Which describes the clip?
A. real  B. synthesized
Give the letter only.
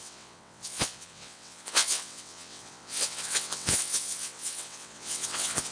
B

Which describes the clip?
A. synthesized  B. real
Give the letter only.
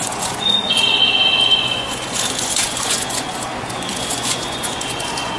A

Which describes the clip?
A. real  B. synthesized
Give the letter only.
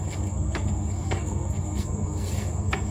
B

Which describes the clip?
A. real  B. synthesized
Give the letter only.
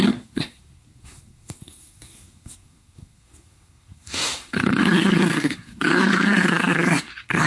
B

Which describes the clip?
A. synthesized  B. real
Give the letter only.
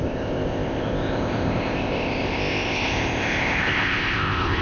A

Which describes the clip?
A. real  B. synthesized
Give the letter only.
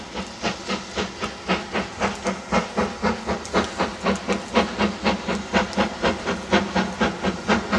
A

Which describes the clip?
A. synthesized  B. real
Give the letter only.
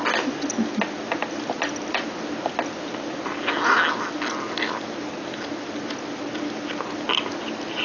B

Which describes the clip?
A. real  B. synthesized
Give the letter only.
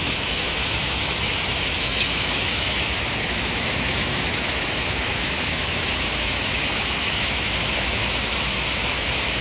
B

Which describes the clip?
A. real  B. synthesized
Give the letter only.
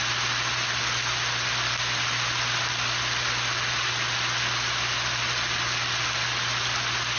A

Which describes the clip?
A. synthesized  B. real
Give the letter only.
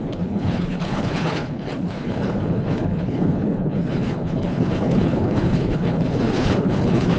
A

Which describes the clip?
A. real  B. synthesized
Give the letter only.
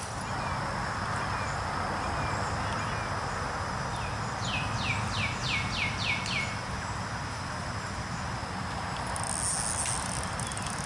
A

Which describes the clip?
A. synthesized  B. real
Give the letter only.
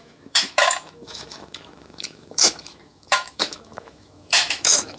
A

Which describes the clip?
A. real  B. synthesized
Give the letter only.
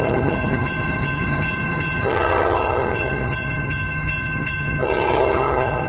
B